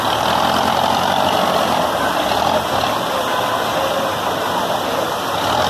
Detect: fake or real real